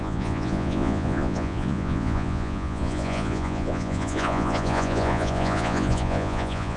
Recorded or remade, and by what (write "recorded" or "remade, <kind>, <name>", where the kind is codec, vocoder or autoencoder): remade, vocoder, Vocos